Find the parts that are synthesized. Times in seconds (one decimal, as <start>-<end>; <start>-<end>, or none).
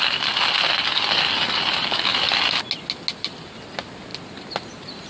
none